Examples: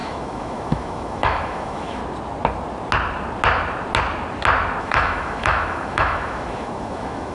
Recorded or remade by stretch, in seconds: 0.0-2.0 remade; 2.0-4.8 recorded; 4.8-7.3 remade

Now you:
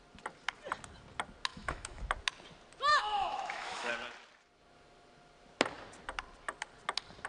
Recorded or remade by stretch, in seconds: 0.0-1.5 recorded; 1.5-2.0 remade; 2.0-2.9 recorded; 2.9-3.9 remade; 3.9-7.3 recorded

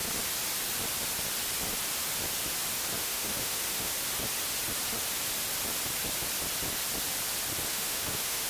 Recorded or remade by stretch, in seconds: 0.0-3.0 recorded; 3.0-3.9 remade; 3.9-7.7 recorded; 7.7-8.5 remade